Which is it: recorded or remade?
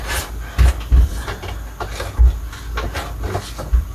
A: recorded